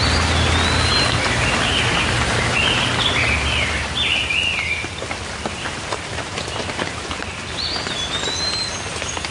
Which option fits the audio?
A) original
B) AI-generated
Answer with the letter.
B